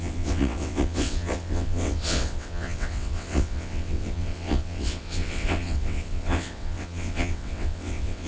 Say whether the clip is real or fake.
fake